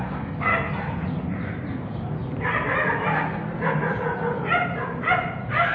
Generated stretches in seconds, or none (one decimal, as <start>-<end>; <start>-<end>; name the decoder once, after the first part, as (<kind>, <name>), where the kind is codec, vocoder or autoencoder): 0.0-0.5 (codec, DAC); 1.8-2.2